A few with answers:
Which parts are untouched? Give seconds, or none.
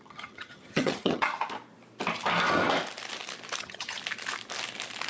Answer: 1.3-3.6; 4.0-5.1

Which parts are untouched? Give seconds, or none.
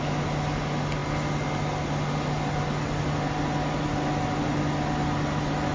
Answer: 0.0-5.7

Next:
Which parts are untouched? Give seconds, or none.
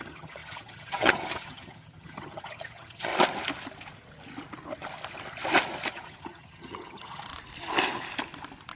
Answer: 3.1-5.9; 7.3-8.8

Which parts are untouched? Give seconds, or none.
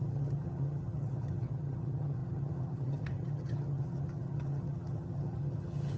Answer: none